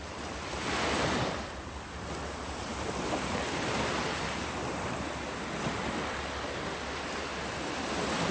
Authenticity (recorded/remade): recorded